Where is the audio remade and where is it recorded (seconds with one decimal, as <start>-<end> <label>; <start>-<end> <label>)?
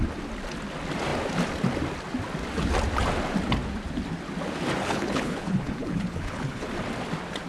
0.0-4.8 recorded; 4.8-6.7 remade; 6.7-7.5 recorded